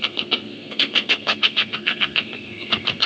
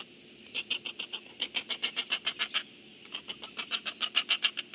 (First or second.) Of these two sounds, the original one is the second